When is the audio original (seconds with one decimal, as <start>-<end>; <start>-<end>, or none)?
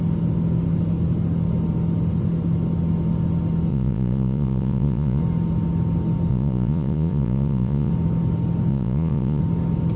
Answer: 0.0-3.7; 5.2-6.3; 7.9-8.7; 9.4-10.0